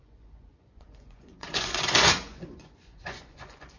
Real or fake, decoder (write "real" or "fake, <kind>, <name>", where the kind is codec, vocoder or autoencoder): fake, vocoder, Vocos